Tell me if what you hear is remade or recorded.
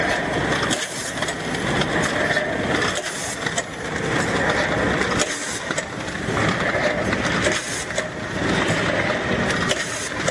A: recorded